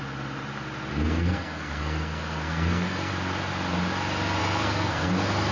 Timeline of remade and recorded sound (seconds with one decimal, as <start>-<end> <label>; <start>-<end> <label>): 0.0-0.9 recorded; 0.9-3.1 remade; 3.1-4.4 recorded; 4.4-5.1 remade; 5.1-5.5 recorded